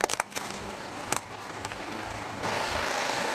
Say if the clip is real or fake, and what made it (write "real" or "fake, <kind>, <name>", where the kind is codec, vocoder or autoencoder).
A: fake, codec, DAC